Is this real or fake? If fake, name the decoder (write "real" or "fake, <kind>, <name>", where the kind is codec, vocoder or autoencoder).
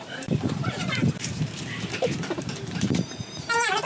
fake, vocoder, BigVGAN v2